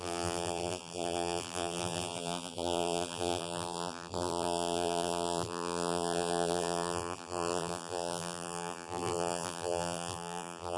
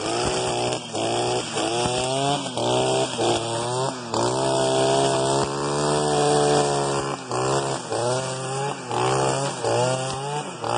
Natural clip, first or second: second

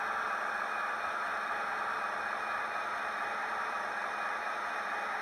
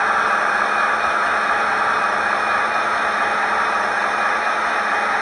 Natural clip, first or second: second